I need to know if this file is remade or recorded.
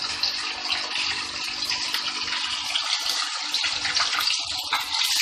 recorded